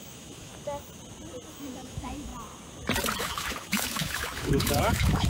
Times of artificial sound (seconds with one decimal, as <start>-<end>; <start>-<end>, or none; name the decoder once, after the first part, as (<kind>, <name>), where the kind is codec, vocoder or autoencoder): 0.0-0.5 (autoencoder, DAC-VAE); 1.5-2.3; 3.2-5.3